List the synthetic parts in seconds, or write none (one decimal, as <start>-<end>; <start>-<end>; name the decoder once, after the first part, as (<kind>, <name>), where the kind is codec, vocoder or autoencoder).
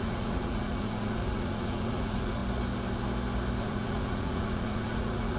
0.0-2.4 (vocoder, Vocos); 3.6-5.4